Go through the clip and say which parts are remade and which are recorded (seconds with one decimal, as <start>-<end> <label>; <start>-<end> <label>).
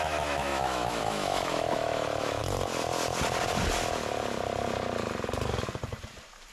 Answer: 0.0-2.4 remade; 2.4-6.5 recorded